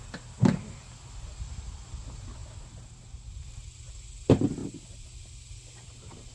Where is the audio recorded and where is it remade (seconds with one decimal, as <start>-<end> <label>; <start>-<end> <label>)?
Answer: 0.0-6.3 recorded